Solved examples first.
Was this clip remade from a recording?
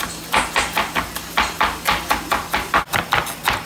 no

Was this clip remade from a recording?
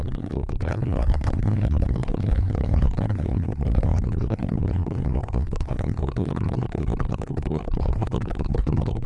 yes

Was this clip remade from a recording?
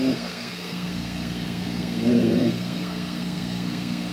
yes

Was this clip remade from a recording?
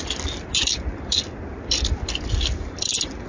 no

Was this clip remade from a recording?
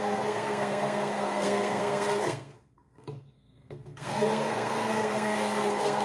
yes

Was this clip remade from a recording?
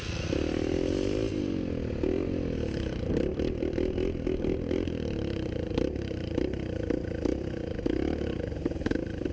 no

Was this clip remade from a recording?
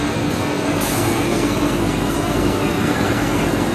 yes